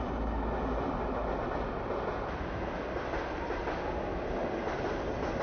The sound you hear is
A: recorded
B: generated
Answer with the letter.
A